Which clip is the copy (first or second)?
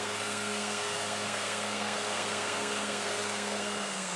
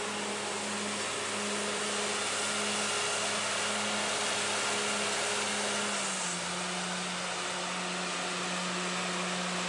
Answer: first